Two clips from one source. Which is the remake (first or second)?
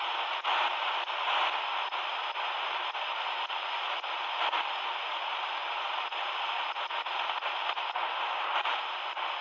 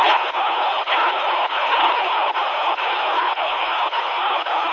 second